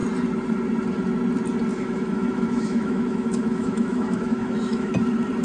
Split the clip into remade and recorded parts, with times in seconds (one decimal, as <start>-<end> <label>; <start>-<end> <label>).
0.0-1.7 recorded; 1.7-4.9 remade; 4.9-5.4 recorded